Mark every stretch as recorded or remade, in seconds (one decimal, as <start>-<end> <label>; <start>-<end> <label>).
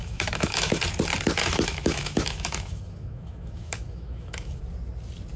0.0-0.8 remade; 0.8-1.4 recorded; 1.4-4.6 remade; 4.6-5.4 recorded